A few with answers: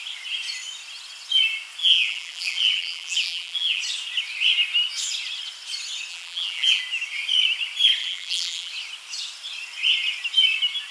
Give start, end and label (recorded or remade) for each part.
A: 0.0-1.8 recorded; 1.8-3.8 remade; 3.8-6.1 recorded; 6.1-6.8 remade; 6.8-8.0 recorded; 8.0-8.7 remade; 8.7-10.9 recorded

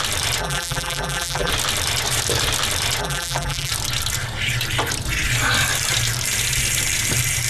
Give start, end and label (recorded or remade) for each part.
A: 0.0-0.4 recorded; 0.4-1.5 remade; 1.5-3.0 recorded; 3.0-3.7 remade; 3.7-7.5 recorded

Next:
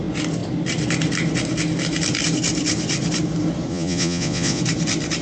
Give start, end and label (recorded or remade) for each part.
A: 0.0-3.7 recorded; 3.7-4.6 remade; 4.6-5.2 recorded